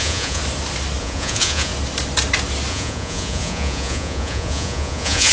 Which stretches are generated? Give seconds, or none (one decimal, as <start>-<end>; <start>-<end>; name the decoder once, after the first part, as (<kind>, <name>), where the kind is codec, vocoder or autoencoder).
0.0-0.4 (vocoder, Vocos); 1.0-1.7; 2.7-5.3